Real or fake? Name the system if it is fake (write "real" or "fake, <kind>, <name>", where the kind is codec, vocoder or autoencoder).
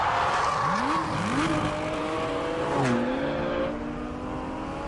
real